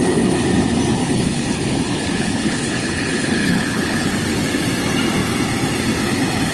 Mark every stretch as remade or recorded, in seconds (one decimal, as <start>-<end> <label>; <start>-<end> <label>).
0.0-1.0 recorded; 1.0-4.1 remade; 4.1-6.5 recorded